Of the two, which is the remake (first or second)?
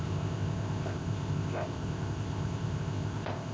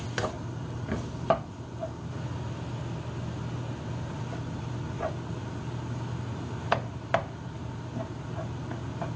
first